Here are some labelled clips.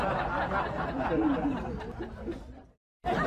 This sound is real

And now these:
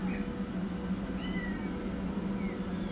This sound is real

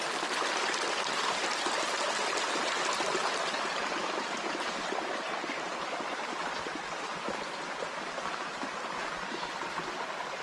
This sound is real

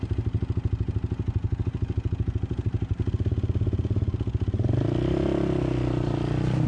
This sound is real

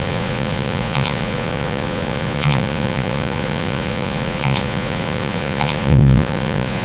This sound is fake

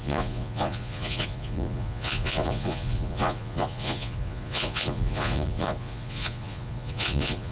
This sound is fake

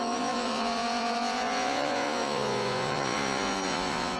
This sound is fake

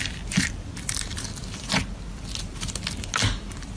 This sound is real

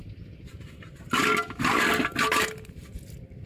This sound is real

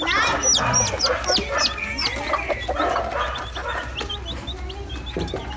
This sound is real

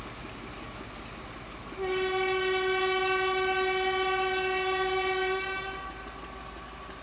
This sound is real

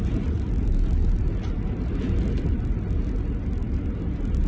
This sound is real